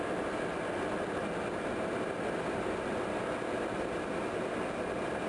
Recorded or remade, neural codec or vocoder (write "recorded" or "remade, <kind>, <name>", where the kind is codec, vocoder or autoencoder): recorded